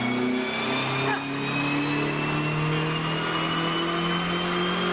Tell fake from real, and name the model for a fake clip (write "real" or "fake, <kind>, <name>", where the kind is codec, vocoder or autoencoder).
real